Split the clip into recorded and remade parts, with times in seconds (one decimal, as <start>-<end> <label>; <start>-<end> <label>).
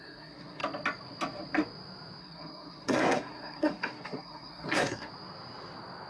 0.0-0.6 remade; 0.6-2.2 recorded; 2.2-5.1 remade; 5.1-6.1 recorded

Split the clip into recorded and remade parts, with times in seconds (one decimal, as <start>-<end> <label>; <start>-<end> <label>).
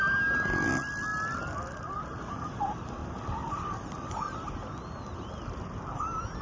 0.0-6.4 recorded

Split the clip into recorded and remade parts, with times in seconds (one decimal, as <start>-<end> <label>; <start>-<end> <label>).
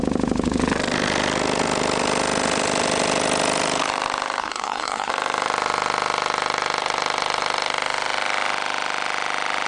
0.0-4.4 recorded; 4.4-5.1 remade; 5.1-9.7 recorded